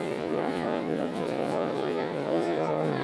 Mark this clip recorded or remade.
remade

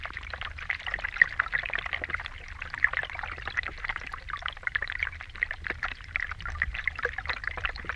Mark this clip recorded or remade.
recorded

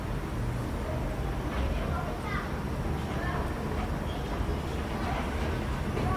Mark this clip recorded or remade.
recorded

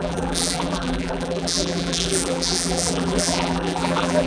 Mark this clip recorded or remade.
remade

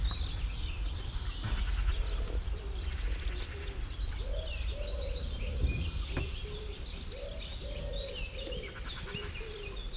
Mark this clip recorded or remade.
recorded